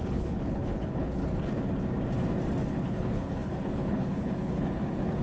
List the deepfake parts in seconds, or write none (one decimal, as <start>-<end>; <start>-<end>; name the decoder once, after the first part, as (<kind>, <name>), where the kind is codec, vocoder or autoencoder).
0.0-1.2 (codec, HILCodec); 2.7-5.2

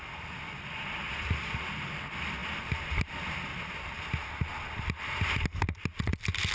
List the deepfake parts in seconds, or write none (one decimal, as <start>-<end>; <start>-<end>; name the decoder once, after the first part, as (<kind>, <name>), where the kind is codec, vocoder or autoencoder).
none

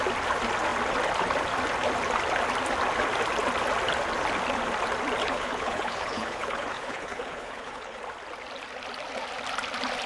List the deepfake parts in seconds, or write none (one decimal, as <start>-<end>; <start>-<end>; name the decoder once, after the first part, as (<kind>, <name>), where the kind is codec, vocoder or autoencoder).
5.2-8.0 (codec, HILCodec)